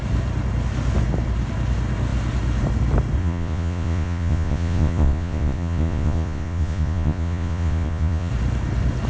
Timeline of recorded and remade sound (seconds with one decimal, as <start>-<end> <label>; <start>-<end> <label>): 0.0-3.2 recorded; 3.2-8.3 remade; 8.3-9.1 recorded